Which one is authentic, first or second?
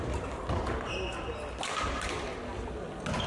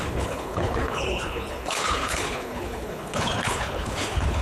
first